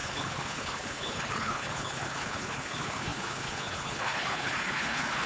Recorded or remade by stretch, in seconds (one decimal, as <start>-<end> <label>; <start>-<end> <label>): 0.0-5.3 remade